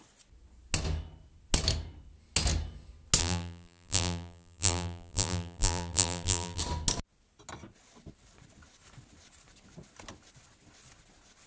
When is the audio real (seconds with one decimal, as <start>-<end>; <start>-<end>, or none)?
0.0-3.2; 6.6-11.5